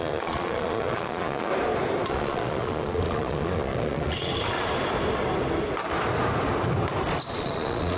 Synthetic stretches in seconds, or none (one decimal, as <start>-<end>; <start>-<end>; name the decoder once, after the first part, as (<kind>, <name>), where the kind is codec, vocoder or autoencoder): 0.0-1.5 (vocoder, Vocos); 2.1-4.3; 7.3-8.0